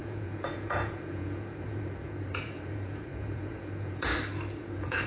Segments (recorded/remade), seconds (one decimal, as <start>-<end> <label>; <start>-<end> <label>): 0.0-4.1 remade; 4.1-4.6 recorded; 4.6-5.1 remade